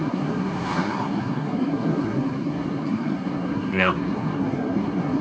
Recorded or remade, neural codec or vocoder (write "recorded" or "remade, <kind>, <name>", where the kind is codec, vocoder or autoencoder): remade, codec, SNAC